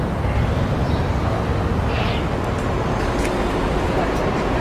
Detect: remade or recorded recorded